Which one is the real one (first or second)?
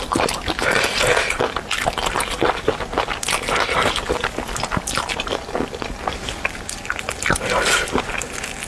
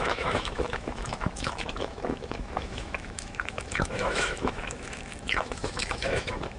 first